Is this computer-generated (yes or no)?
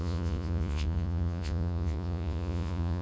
yes